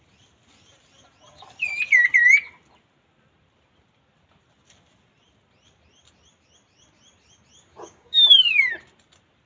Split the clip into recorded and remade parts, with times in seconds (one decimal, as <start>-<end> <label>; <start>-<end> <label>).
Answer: 0.0-7.7 recorded; 7.7-8.7 remade; 8.7-9.5 recorded